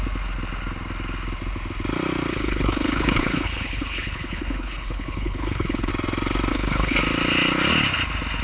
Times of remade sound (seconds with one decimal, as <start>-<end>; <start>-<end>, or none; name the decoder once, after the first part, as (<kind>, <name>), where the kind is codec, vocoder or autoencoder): 2.3-5.9 (codec, HILCodec); 6.5-7.0